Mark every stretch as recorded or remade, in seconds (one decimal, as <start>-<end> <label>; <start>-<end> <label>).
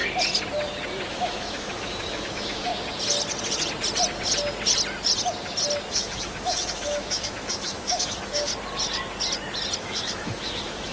0.0-1.1 recorded; 1.1-2.7 remade; 2.7-5.9 recorded; 5.9-8.5 remade; 8.5-9.8 recorded; 9.8-10.9 remade